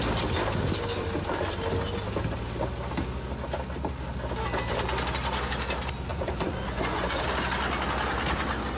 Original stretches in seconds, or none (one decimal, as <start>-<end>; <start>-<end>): 0.0-6.1; 7.2-8.8